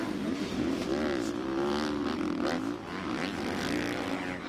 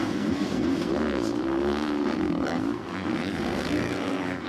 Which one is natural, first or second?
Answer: first